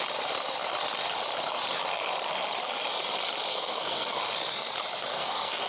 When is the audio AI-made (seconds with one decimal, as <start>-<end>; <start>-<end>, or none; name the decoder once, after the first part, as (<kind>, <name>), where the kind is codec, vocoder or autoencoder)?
3.5-4.2 (codec, SNAC); 5.1-5.7